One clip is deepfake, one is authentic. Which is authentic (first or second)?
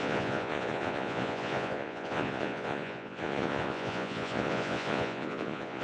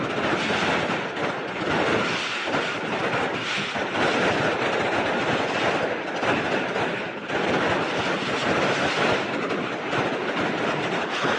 second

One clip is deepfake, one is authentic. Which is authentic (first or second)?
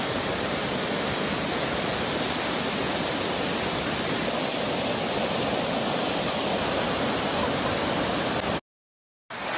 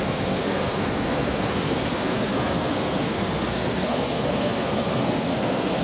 first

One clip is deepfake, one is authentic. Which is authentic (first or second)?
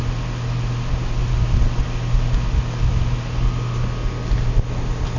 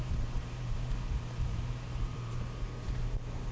first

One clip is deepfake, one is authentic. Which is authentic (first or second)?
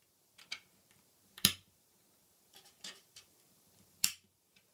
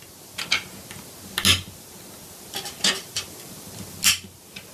second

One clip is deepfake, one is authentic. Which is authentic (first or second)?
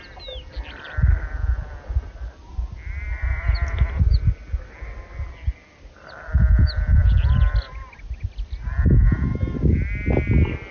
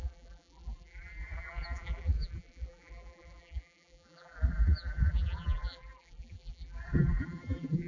first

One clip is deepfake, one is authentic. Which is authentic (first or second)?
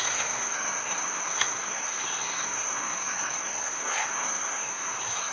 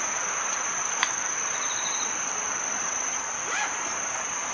second